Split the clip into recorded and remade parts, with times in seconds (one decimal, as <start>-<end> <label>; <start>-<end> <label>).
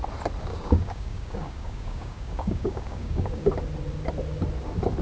0.0-0.5 recorded; 0.5-3.5 remade; 3.5-5.0 recorded